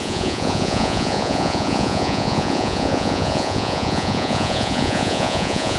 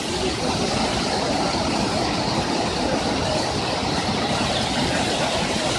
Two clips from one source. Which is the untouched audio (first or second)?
second